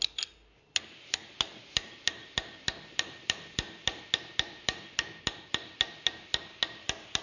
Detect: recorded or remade recorded